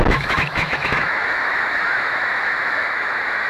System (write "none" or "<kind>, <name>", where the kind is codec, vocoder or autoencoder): autoencoder, DAC-VAE